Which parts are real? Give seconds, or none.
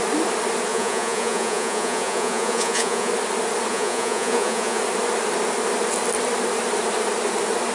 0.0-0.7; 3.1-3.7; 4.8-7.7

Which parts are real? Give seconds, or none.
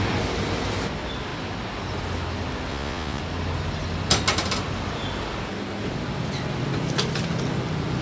0.0-2.7; 3.2-8.0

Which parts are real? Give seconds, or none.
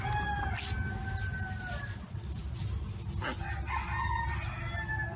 0.0-5.2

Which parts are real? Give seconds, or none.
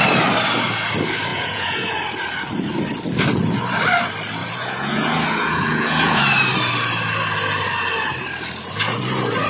0.0-1.3; 1.9-4.4; 6.2-9.5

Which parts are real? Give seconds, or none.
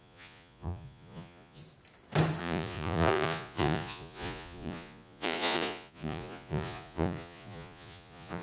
1.6-2.4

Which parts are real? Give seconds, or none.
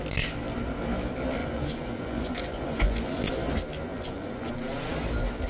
0.0-1.4; 3.3-3.9; 4.5-5.5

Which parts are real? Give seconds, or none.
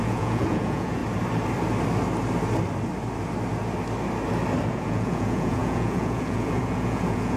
1.0-4.7